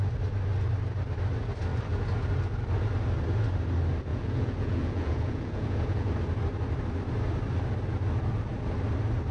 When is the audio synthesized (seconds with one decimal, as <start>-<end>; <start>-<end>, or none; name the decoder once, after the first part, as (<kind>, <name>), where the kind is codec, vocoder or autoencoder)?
4.1-6.1 (vocoder, Vocos)